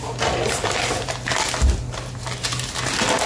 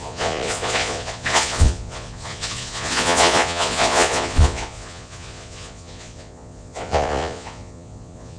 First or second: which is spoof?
second